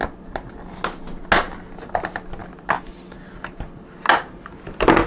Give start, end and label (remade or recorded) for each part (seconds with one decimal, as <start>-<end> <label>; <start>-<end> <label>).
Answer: 0.0-5.1 recorded